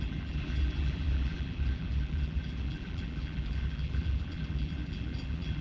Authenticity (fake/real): fake